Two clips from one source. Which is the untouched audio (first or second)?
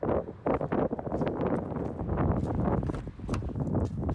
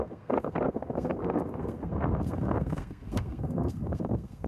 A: first